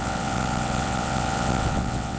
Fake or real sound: fake